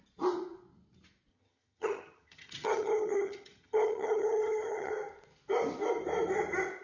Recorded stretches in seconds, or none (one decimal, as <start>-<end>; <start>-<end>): 0.0-1.3; 4.9-6.8